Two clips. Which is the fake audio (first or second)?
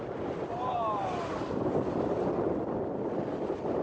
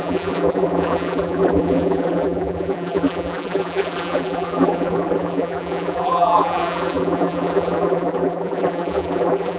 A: second